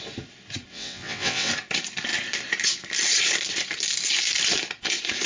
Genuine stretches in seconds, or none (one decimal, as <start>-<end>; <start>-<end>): 0.0-0.7; 1.5-5.3